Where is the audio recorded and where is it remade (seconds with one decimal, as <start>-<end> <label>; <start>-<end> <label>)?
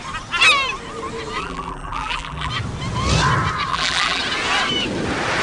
0.0-1.4 recorded; 1.4-2.5 remade; 2.5-3.7 recorded; 3.7-4.2 remade; 4.2-5.4 recorded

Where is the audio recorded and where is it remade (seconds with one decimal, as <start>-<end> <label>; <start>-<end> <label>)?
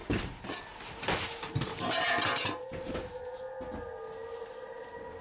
0.0-3.1 remade; 3.1-5.2 recorded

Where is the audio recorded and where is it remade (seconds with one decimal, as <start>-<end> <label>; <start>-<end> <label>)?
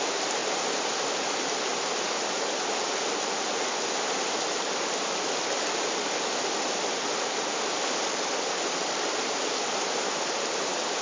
0.0-11.0 recorded